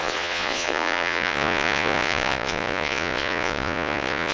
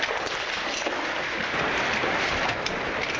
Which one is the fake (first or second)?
first